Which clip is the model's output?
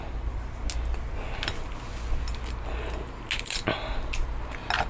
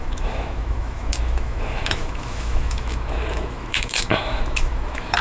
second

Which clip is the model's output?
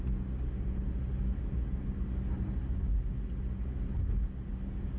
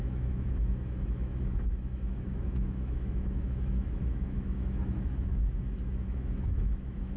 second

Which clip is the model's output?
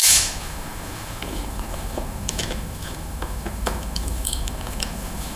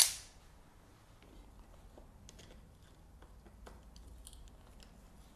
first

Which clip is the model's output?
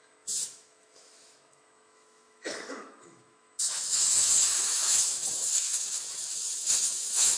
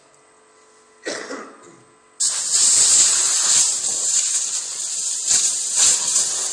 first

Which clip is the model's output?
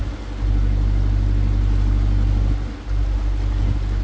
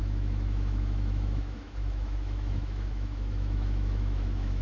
second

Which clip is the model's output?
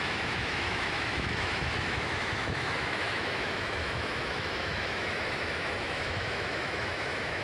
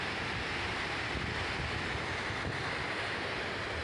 first